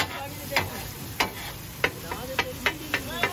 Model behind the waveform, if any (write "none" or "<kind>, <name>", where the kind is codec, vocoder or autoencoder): none